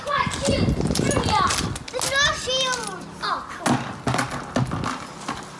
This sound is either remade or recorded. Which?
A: recorded